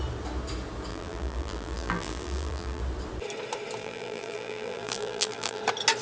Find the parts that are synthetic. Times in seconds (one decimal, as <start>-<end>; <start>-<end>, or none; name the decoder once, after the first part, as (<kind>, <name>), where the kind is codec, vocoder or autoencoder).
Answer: 0.9-2.8 (vocoder, BigVGAN v2); 3.8-5.6